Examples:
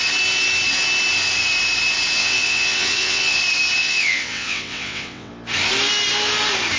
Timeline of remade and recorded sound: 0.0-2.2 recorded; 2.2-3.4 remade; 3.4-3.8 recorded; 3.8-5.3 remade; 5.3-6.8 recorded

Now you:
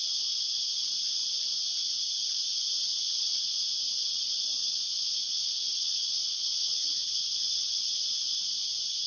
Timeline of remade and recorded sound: 0.0-2.9 recorded; 2.9-3.5 remade; 3.5-4.6 recorded; 4.6-7.9 remade; 7.9-9.1 recorded